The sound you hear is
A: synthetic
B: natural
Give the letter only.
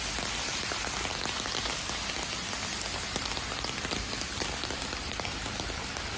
B